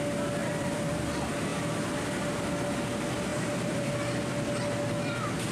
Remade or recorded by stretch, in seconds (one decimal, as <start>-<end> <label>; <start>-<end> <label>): 0.0-0.4 recorded; 0.4-1.1 remade; 1.1-3.3 recorded; 3.3-3.9 remade; 3.9-5.5 recorded